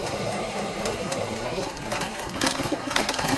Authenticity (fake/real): fake